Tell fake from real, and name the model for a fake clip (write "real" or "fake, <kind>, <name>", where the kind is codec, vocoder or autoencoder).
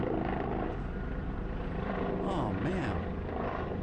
fake, vocoder, BigVGAN v2